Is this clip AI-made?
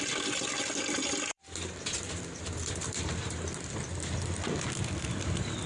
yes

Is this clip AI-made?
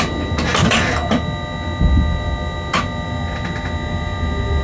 no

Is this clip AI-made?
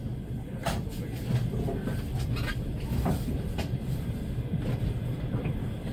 yes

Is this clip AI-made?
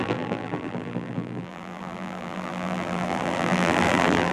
yes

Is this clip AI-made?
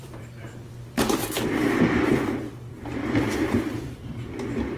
yes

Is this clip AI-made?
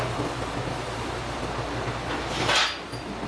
yes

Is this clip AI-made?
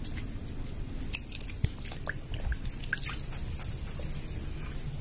no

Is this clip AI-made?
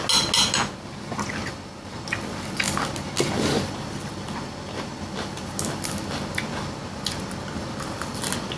no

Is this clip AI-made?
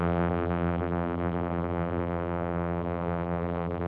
yes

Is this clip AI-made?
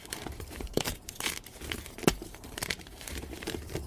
yes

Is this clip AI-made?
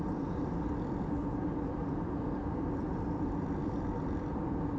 yes